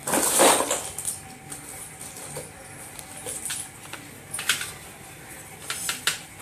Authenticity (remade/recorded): recorded